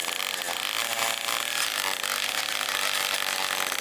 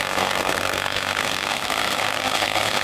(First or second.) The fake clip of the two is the second